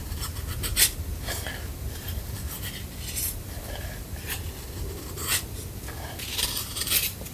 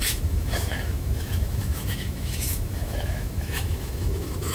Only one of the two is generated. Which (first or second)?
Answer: second